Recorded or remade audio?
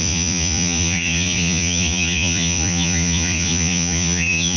remade